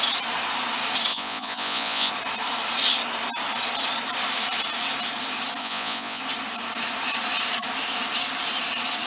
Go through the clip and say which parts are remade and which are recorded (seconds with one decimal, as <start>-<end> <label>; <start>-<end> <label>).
0.0-1.1 recorded; 1.1-2.1 remade; 2.1-5.6 recorded; 5.6-6.2 remade; 6.2-9.1 recorded